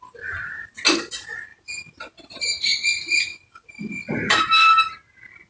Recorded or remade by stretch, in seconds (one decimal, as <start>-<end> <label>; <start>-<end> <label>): 0.0-5.5 recorded